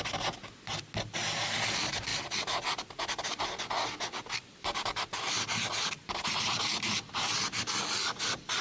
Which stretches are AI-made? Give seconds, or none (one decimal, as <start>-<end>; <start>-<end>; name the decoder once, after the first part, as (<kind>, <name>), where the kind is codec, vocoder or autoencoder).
none